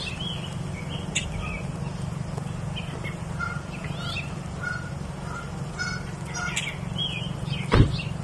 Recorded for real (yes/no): yes